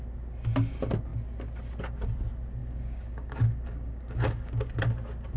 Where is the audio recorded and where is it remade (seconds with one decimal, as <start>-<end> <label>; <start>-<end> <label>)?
0.0-2.6 recorded; 2.6-4.8 remade; 4.8-5.4 recorded